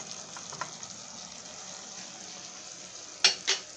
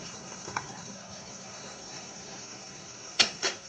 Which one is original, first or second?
first